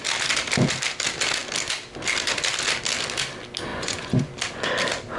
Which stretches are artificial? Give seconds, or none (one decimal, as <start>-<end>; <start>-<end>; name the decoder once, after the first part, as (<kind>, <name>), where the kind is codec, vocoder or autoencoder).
3.7-4.3 (vocoder, Vocos)